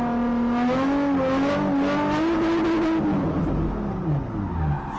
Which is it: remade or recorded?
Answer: recorded